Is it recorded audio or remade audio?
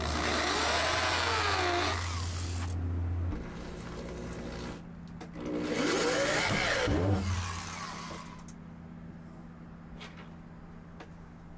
recorded